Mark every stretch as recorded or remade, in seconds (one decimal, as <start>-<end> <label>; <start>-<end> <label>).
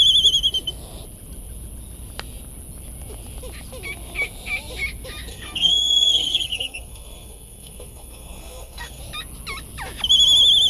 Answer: 0.0-5.3 recorded; 5.3-9.0 remade; 9.0-10.7 recorded